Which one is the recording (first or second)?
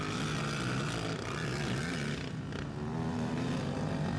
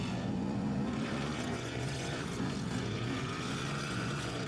first